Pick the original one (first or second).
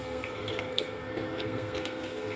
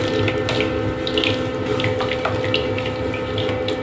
second